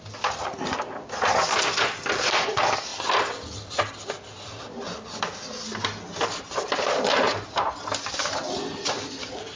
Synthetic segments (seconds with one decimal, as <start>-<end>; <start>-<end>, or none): none